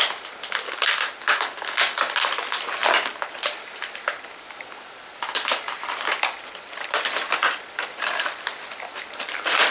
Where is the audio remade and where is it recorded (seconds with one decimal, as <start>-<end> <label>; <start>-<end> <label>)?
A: 0.0-9.7 remade